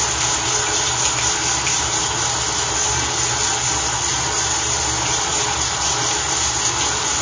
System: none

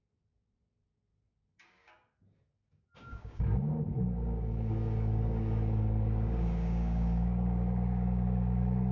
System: codec, DAC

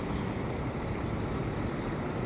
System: none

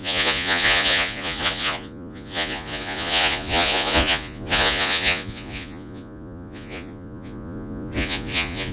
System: vocoder, Vocos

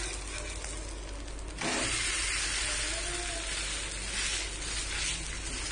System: none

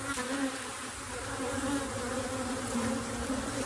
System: none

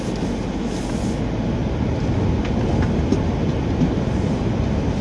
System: none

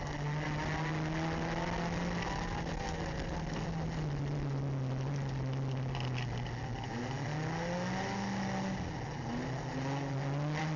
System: none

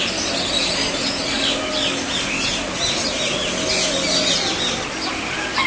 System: none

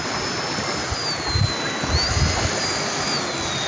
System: none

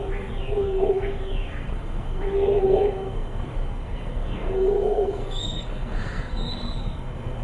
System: codec, SNAC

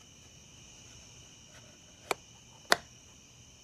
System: none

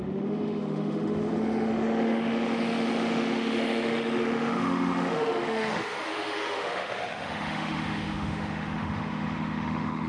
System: autoencoder, DAC-VAE